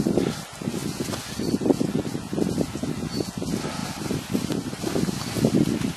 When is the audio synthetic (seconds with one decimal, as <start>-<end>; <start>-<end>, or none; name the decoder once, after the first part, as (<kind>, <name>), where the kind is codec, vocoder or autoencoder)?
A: 3.8-4.8 (vocoder, BigVGAN v2)